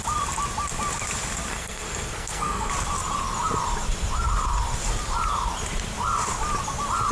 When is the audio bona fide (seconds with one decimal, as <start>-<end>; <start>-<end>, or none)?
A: 0.0-1.5; 2.7-7.1